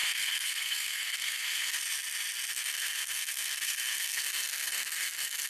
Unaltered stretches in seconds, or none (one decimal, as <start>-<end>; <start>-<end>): 1.8-2.5